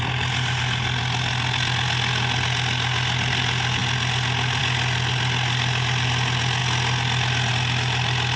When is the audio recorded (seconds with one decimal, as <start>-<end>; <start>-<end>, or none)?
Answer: 0.0-8.4